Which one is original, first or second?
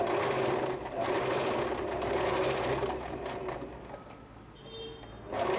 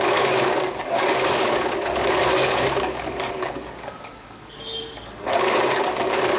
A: first